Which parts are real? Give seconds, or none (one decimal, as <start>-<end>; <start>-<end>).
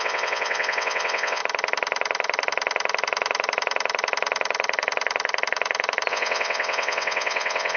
1.4-6.1